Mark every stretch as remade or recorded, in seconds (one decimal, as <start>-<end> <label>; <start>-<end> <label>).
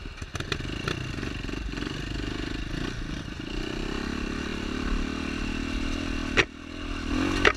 0.0-7.6 recorded